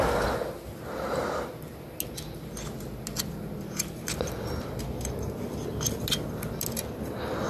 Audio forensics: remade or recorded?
recorded